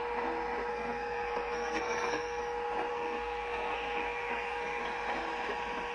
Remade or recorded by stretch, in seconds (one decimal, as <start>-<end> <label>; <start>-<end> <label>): 0.0-0.7 recorded; 0.7-2.4 remade; 2.4-2.9 recorded; 2.9-4.8 remade; 4.8-5.9 recorded